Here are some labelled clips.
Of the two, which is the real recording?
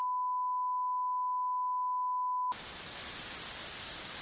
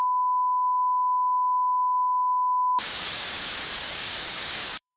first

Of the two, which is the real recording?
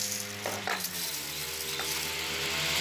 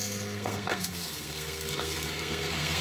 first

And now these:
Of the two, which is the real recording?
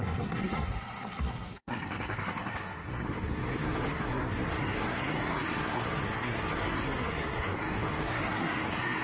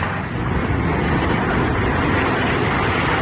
second